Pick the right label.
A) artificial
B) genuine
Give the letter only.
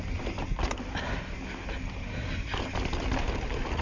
B